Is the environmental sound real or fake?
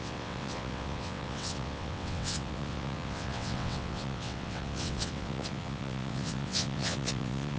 fake